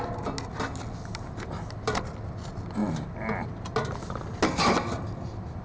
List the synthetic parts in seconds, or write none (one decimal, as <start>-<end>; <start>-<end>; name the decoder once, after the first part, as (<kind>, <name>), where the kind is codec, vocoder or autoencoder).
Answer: none